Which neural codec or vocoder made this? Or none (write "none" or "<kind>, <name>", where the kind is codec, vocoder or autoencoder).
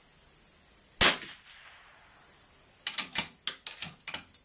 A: none